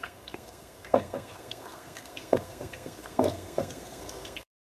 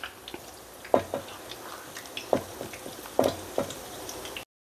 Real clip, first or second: second